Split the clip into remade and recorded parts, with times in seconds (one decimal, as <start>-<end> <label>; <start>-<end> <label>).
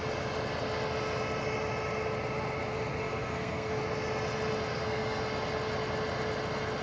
0.0-2.9 recorded; 2.9-3.8 remade; 3.8-4.7 recorded; 4.7-5.2 remade; 5.2-6.8 recorded